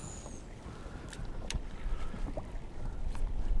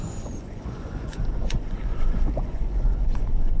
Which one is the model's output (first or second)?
second